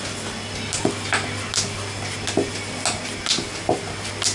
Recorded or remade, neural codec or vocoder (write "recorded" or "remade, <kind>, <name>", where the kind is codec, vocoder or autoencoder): recorded